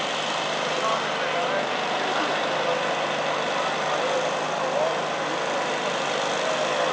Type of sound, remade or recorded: recorded